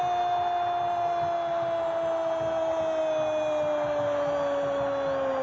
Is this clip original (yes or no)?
yes